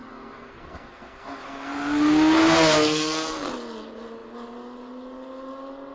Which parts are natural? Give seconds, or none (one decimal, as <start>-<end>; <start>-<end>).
3.5-5.9

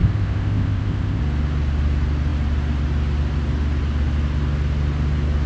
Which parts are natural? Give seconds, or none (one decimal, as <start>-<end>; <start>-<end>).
1.2-5.5

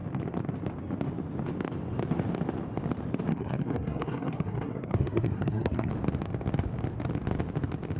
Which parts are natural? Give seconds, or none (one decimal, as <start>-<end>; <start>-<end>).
0.0-3.3; 5.9-8.0